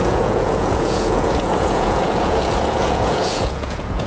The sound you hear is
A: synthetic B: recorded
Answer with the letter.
A